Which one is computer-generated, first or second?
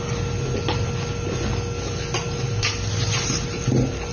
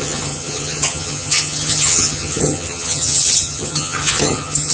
second